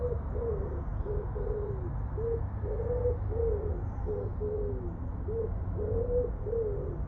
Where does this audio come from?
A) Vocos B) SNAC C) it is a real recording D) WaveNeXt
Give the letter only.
C